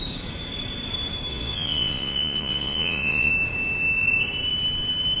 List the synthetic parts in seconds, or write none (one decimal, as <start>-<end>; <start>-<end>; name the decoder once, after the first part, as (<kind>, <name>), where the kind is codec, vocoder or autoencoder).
1.3-3.3 (vocoder, Vocos)